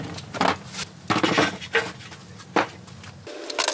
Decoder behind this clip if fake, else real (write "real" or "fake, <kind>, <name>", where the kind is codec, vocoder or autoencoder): real